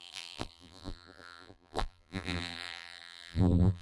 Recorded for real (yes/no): no